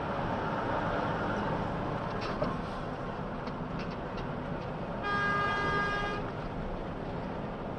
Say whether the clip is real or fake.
real